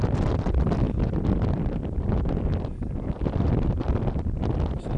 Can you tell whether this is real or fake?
real